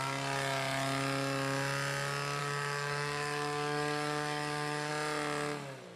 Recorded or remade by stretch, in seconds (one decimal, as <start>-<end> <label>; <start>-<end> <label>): 0.0-2.4 recorded; 2.4-4.9 remade; 4.9-6.0 recorded